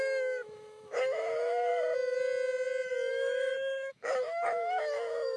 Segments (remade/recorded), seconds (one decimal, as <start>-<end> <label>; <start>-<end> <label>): 0.0-1.7 remade; 1.7-3.1 recorded; 3.1-5.4 remade